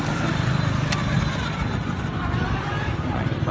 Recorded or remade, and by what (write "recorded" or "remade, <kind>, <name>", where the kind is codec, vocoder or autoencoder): recorded